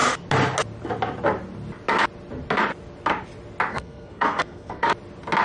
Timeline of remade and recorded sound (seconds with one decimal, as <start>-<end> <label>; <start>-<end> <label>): 0.0-3.7 recorded; 3.7-4.9 remade; 4.9-5.4 recorded